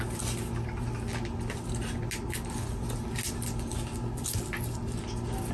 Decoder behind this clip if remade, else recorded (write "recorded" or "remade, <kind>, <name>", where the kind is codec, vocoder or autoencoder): recorded